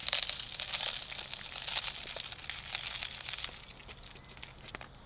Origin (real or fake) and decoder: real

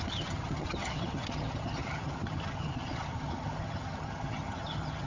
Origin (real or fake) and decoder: fake, vocoder, HiFi-GAN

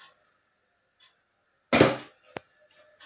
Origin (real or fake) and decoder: real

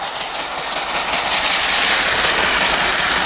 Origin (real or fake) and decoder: real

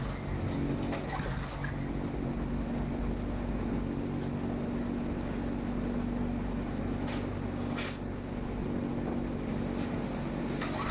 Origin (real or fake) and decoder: real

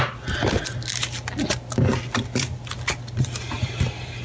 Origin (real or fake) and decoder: real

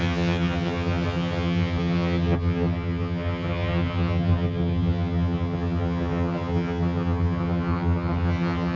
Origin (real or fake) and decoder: fake, vocoder, HiFi-GAN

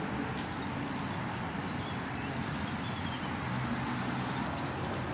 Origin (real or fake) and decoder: real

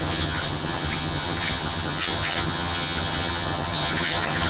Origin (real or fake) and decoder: fake, vocoder, HiFi-GAN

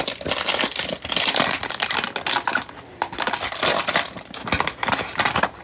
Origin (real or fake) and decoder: real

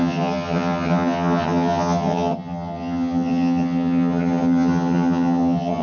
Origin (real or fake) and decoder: fake, vocoder, HiFi-GAN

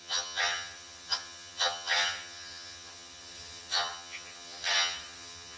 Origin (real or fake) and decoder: fake, vocoder, HiFi-GAN